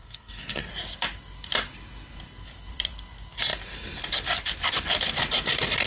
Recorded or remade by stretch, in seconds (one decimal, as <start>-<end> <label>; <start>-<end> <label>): 0.0-0.7 remade; 0.7-5.9 recorded